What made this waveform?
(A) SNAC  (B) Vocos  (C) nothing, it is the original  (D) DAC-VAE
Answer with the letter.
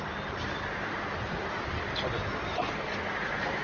C